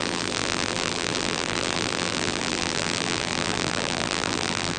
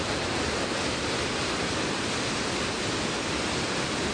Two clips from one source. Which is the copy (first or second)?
first